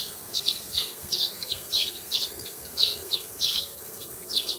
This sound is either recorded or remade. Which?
remade